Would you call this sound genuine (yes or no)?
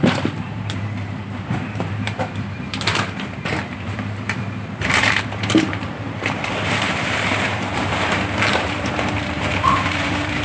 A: no